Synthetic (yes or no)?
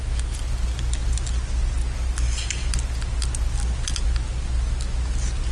no